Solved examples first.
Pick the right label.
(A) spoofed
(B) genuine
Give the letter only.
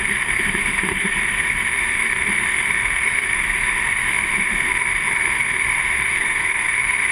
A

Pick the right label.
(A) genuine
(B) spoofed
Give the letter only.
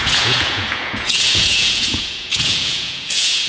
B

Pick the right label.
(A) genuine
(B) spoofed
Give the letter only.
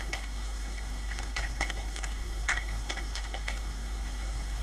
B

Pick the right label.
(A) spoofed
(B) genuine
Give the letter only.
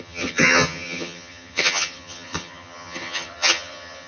A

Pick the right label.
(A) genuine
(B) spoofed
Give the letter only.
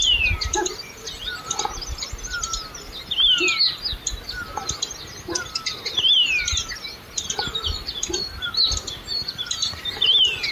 A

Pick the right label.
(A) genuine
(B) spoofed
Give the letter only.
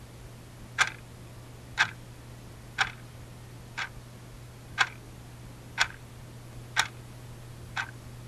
A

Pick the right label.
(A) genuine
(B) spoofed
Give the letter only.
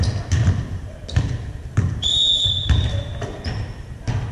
A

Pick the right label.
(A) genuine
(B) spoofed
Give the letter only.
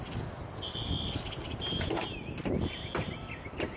A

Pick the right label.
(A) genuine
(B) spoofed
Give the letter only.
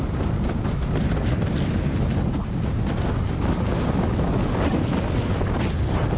A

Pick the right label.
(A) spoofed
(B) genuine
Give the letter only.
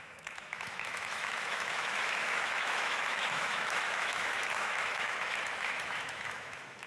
A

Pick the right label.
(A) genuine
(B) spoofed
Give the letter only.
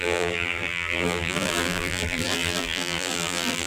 B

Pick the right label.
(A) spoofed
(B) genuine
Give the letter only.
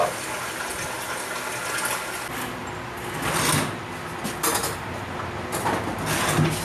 B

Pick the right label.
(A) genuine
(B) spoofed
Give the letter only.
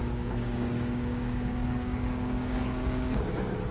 B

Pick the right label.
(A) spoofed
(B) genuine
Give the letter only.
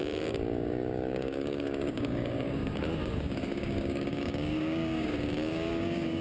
A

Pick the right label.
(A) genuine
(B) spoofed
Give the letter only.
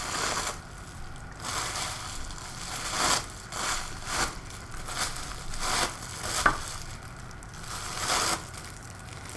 A